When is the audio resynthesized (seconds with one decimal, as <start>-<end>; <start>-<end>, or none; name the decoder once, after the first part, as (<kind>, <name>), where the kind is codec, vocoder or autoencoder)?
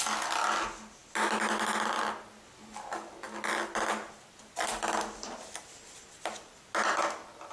none